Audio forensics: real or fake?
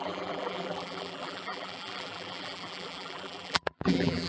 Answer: fake